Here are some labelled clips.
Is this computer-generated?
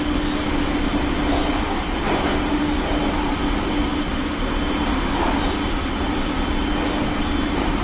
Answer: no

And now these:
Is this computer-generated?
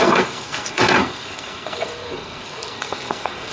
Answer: yes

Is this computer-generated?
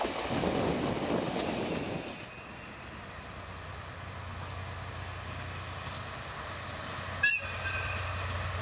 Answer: no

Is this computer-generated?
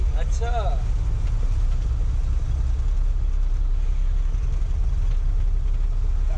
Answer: no